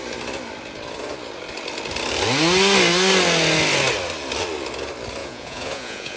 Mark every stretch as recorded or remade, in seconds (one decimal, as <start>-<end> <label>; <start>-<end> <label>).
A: 0.0-5.2 recorded; 5.2-6.2 remade

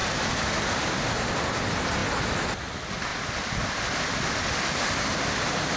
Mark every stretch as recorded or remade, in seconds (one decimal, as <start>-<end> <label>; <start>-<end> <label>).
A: 0.0-5.8 recorded

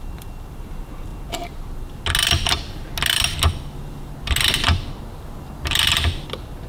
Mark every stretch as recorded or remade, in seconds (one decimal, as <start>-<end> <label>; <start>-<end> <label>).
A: 0.0-6.7 recorded

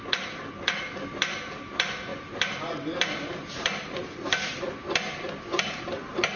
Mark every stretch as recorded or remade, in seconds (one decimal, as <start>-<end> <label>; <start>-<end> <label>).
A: 0.0-6.4 remade

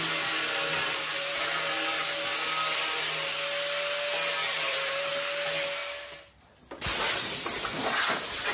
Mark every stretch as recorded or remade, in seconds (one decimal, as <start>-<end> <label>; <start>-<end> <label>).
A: 0.0-1.1 recorded; 1.1-2.1 remade; 2.1-4.5 recorded; 4.5-5.1 remade; 5.1-8.5 recorded

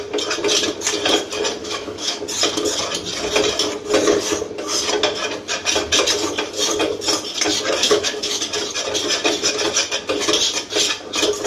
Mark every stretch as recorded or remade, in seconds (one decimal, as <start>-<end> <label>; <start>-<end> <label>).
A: 0.0-1.6 recorded; 1.6-2.2 remade; 2.2-7.8 recorded; 7.8-8.4 remade; 8.4-11.5 recorded

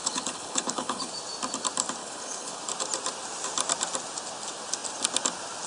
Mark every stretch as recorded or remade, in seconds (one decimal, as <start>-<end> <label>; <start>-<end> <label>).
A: 0.0-1.1 remade; 1.1-2.0 recorded; 2.0-2.6 remade; 2.6-5.7 recorded

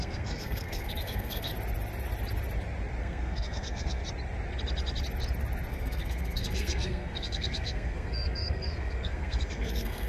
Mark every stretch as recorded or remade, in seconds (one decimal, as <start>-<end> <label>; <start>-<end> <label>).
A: 0.0-1.5 remade; 1.5-3.0 recorded; 3.0-4.0 remade; 4.0-5.7 recorded; 5.7-10.1 remade